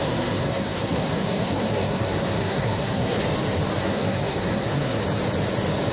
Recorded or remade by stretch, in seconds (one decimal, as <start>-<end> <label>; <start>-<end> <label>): 0.0-3.2 remade; 3.2-3.8 recorded; 3.8-5.0 remade; 5.0-5.9 recorded